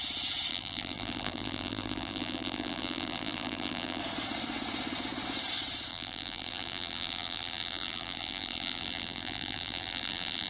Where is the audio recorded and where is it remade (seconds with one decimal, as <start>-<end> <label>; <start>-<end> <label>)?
0.0-0.5 recorded; 0.5-4.0 remade; 4.0-5.9 recorded; 5.9-10.5 remade